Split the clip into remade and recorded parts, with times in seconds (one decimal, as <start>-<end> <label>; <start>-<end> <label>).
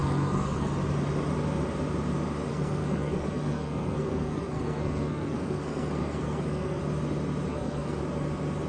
0.0-0.7 remade; 0.7-2.5 recorded; 2.5-6.8 remade; 6.8-7.5 recorded; 7.5-8.0 remade; 8.0-8.7 recorded